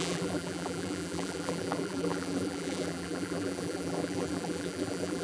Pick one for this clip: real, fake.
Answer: fake